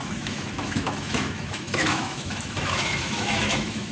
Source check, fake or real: fake